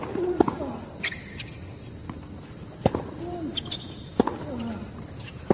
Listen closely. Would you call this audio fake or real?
real